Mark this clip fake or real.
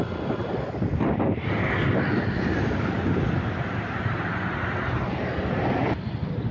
real